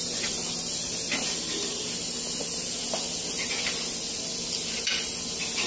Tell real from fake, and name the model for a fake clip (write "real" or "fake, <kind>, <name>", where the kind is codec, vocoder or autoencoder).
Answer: real